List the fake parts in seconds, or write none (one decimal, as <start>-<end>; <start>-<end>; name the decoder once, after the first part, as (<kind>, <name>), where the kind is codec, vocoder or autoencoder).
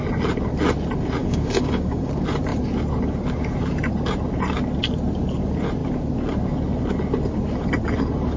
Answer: 1.2-2.1 (codec, DAC)